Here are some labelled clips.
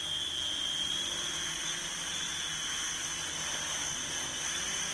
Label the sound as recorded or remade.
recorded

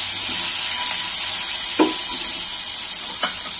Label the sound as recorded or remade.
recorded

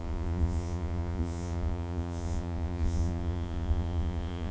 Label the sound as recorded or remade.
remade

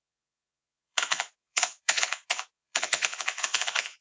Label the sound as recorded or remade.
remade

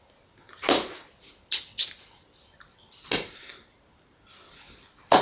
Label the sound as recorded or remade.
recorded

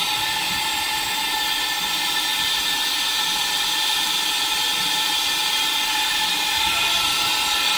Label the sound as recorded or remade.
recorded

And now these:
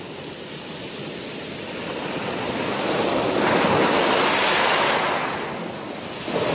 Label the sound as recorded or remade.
recorded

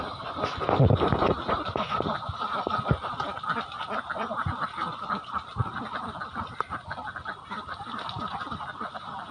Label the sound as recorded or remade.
recorded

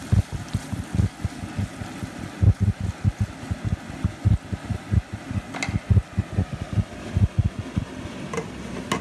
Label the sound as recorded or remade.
recorded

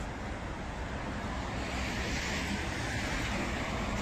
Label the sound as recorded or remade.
recorded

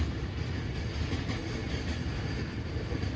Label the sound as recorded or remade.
recorded